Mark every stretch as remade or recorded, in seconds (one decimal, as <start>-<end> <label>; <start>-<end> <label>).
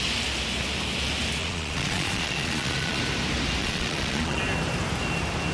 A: 0.0-1.4 recorded; 1.4-3.0 remade; 3.0-3.6 recorded; 3.6-4.4 remade; 4.4-5.5 recorded